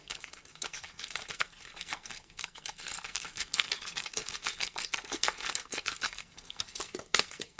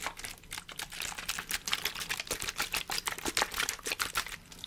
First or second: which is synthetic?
first